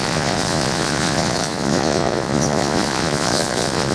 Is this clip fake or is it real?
fake